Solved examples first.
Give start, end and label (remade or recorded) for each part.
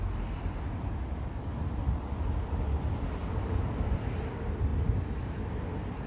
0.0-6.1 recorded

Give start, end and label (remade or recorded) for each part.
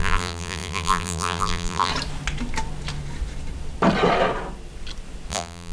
0.0-1.9 remade; 1.9-5.3 recorded; 5.3-5.7 remade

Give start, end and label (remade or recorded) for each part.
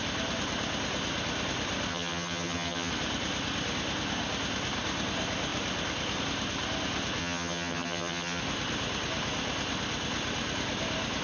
0.0-1.9 recorded; 1.9-2.9 remade; 2.9-7.2 recorded; 7.2-8.4 remade; 8.4-11.2 recorded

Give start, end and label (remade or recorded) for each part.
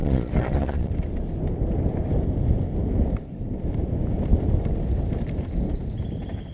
0.0-0.9 remade; 0.9-6.5 recorded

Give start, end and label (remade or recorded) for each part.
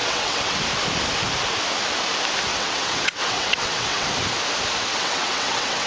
0.0-0.6 remade; 0.6-2.5 recorded; 2.5-4.1 remade; 4.1-4.9 recorded; 4.9-5.9 remade